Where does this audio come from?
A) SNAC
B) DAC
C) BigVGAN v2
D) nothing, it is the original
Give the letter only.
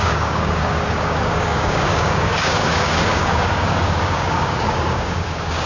B